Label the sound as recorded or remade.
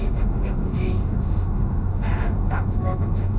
remade